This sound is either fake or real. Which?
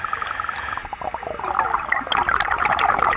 real